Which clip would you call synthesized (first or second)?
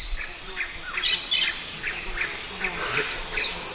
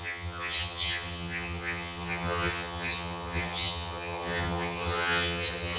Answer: second